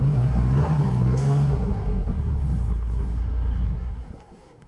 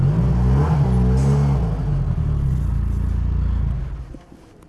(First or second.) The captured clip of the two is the second